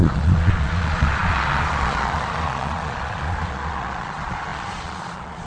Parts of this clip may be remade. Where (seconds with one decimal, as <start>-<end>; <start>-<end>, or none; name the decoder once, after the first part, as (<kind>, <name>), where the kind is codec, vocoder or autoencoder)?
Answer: 0.0-5.5 (vocoder, Vocos)